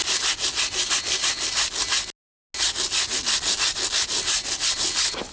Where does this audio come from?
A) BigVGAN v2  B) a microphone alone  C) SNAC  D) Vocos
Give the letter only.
B